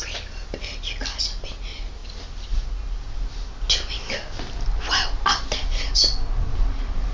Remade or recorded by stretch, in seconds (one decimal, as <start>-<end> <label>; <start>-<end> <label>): 0.0-7.1 recorded